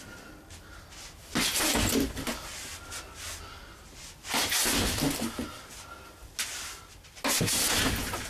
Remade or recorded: recorded